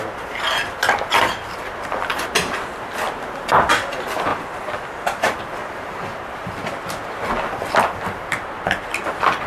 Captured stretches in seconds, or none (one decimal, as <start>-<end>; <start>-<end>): 0.0-4.3; 5.4-9.5